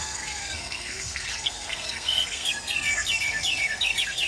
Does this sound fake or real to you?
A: fake